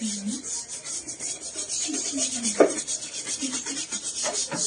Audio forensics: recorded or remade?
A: remade